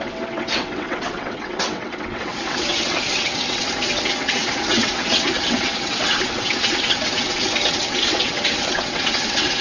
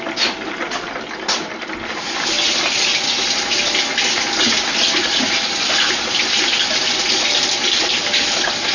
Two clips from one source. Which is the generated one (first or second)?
first